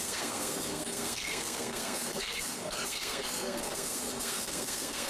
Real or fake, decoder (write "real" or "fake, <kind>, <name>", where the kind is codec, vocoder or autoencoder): fake, codec, SNAC